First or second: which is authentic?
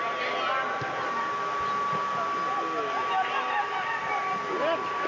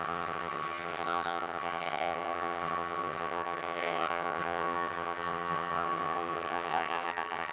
first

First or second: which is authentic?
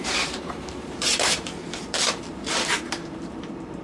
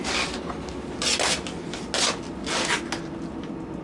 second